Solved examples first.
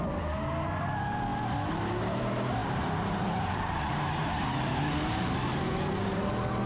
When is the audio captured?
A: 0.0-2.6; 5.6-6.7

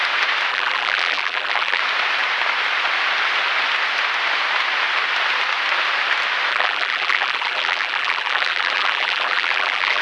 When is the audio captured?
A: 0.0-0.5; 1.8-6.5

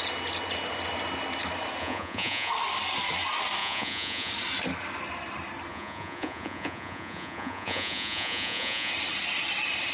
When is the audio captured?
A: 0.0-1.8; 2.5-3.6; 4.3-5.7; 8.9-9.9

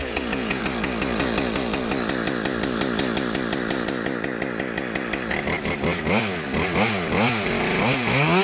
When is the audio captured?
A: 0.6-8.4

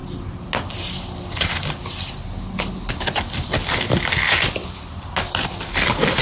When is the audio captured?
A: 0.0-6.2

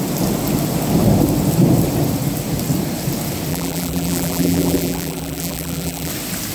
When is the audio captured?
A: 0.0-3.5; 6.1-6.5